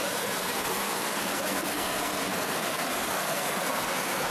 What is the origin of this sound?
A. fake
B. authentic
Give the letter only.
A